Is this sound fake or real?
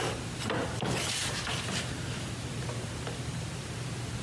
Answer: real